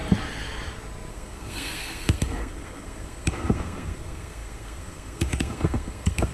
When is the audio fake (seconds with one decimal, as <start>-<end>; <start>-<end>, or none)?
1.1-6.3